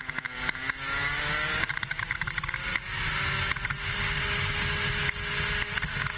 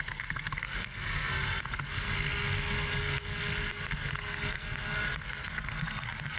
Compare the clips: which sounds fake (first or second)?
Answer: second